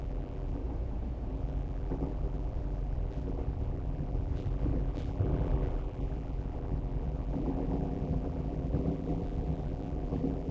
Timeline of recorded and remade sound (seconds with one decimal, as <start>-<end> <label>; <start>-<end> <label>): 0.0-0.6 remade; 0.6-1.3 recorded; 1.3-10.5 remade